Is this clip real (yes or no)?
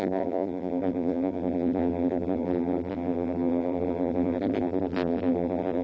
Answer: no